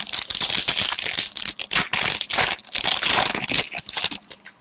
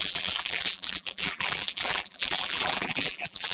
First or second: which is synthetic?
second